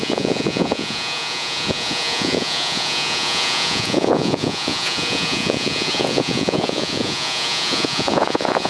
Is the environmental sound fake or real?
fake